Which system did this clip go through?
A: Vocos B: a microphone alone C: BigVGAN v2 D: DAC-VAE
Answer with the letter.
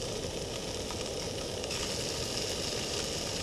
B